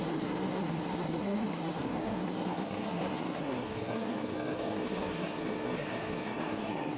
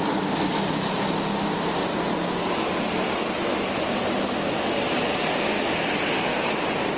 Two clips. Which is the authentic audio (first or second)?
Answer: second